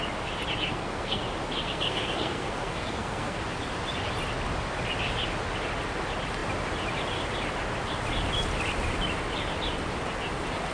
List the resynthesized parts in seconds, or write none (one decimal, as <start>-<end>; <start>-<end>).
0.7-1.2; 1.6-3.4